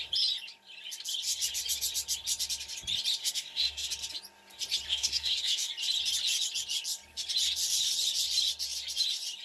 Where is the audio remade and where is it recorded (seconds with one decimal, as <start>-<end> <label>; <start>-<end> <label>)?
0.0-3.2 recorded; 3.2-3.9 remade; 3.9-4.9 recorded; 4.9-5.7 remade; 5.7-9.4 recorded

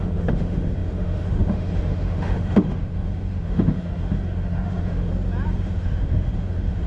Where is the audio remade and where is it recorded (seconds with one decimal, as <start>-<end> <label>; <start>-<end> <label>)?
0.0-5.1 remade; 5.1-5.6 recorded; 5.6-6.9 remade

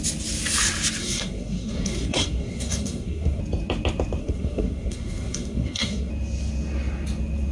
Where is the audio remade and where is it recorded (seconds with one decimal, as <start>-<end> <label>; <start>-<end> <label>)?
0.0-1.0 recorded; 1.0-3.4 remade; 3.4-4.2 recorded; 4.2-6.1 remade; 6.1-7.5 recorded

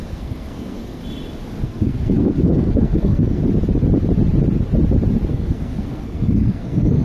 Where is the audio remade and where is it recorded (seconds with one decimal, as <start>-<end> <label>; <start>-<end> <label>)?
0.0-1.0 remade; 1.0-1.6 recorded; 1.6-3.4 remade; 3.4-5.3 recorded; 5.3-7.0 remade

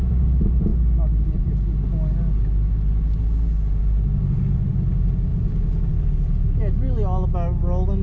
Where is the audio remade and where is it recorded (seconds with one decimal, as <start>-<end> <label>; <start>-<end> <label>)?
0.0-5.3 recorded; 5.3-5.9 remade; 5.9-8.0 recorded